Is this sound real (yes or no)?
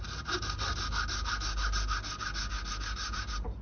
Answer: yes